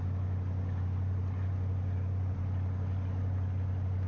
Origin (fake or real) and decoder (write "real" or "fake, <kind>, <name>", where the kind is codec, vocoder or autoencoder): real